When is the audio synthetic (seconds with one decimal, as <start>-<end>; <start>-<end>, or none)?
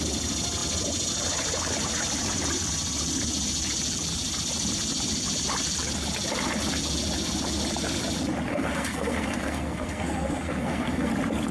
8.5-11.1